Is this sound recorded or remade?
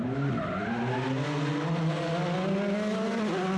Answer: recorded